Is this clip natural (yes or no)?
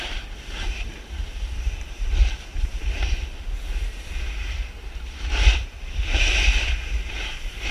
no